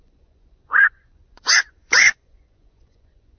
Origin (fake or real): fake